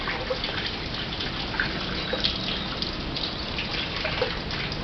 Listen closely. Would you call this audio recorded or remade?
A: recorded